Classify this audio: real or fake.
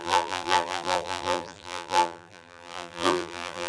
fake